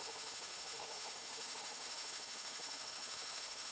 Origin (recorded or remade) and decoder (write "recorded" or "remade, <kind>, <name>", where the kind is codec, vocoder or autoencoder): remade, autoencoder, DAC-VAE